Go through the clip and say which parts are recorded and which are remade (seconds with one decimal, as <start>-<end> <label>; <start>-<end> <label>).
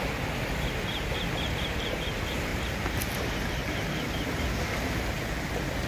0.0-0.9 recorded; 0.9-2.1 remade; 2.1-5.9 recorded